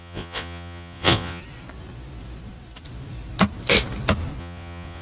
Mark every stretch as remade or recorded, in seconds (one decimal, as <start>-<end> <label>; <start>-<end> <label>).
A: 0.0-1.4 remade; 1.4-4.4 recorded; 4.4-5.0 remade